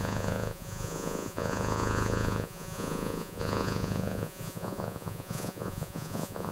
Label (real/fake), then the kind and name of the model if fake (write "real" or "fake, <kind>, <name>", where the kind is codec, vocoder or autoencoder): fake, vocoder, Vocos